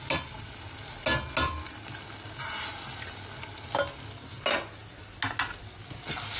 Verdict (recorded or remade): recorded